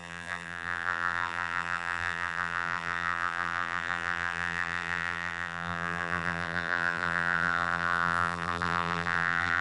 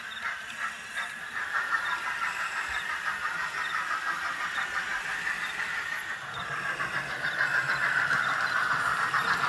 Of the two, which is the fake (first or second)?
first